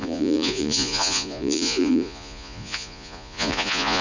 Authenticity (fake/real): fake